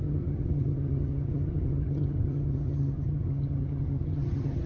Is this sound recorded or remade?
remade